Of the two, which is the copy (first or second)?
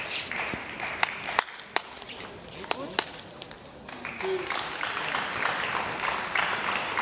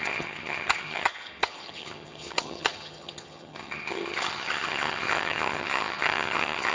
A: second